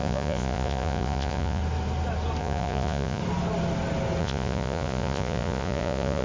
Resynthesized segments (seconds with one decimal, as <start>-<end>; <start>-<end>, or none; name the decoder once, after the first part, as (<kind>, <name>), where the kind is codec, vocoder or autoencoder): 0.0-1.6 (vocoder, Vocos); 2.4-3.2; 4.2-6.2